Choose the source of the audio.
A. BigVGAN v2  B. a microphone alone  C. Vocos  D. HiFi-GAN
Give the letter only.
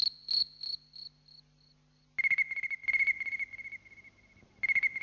B